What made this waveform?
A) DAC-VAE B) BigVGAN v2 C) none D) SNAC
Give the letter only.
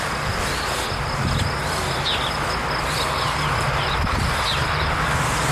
C